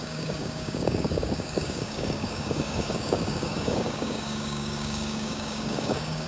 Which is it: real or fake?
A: fake